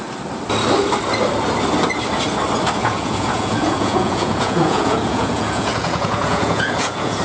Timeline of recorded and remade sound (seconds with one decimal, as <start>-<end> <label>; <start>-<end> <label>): 0.0-2.8 recorded; 2.8-7.2 remade